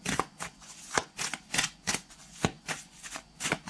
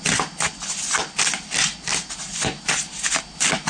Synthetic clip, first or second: first